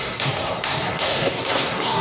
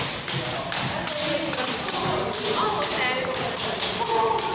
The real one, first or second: second